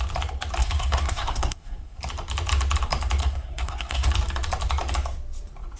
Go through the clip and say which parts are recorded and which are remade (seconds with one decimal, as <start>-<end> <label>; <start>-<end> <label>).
0.0-0.6 recorded; 0.6-2.0 remade; 2.0-3.2 recorded; 3.2-4.1 remade; 4.1-5.8 recorded